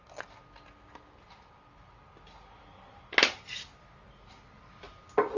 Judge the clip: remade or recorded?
recorded